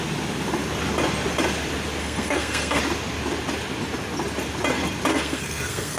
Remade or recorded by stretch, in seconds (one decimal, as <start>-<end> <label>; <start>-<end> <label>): 0.0-2.0 recorded; 2.0-2.8 remade; 2.8-5.1 recorded; 5.1-6.0 remade